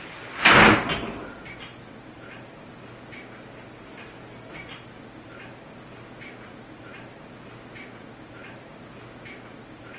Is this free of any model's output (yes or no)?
yes